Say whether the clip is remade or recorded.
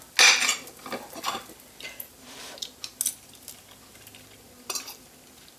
recorded